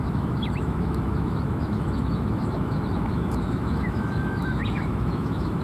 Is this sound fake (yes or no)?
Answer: yes